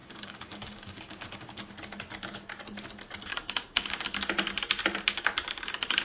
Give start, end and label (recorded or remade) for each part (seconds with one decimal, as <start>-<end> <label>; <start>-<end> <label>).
0.0-1.7 remade; 1.7-3.3 recorded; 3.3-3.9 remade; 3.9-6.0 recorded